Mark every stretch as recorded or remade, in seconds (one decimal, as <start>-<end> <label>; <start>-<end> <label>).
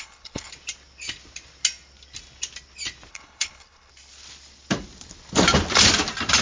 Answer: 0.0-0.5 remade; 0.5-3.1 recorded; 3.1-3.9 remade; 3.9-6.4 recorded